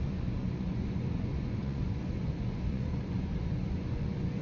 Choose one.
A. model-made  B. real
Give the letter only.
A